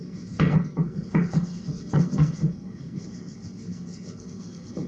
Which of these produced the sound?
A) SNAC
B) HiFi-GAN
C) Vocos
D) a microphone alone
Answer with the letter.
A